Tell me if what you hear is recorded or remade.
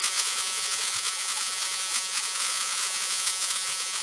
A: remade